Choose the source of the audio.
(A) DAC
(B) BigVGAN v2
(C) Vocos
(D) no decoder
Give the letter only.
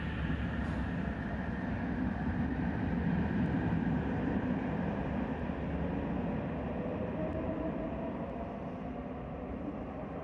D